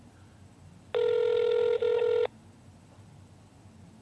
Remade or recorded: recorded